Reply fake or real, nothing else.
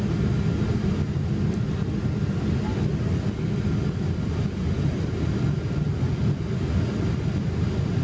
real